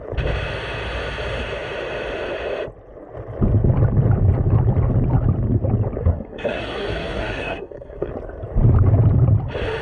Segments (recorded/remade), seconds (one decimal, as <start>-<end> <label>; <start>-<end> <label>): 0.0-6.0 recorded; 6.0-8.1 remade; 8.1-9.8 recorded